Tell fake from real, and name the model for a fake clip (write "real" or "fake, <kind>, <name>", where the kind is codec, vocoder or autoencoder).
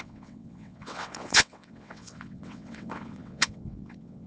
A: fake, vocoder, WaveNeXt